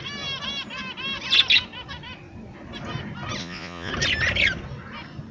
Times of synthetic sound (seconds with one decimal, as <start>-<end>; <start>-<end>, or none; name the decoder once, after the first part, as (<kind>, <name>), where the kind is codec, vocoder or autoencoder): 3.4-3.9 (vocoder, Vocos)